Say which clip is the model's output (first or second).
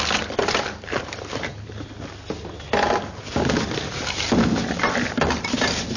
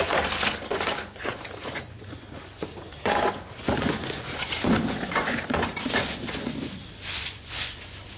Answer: second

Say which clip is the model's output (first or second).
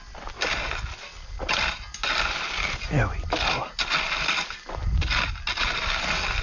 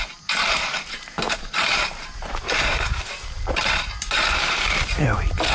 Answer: second